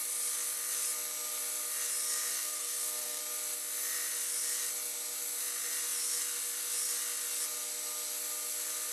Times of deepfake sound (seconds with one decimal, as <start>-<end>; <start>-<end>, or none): 2.3-3.2